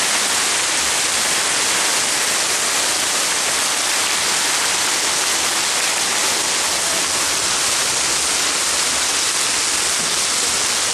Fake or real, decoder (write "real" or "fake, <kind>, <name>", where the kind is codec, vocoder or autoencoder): real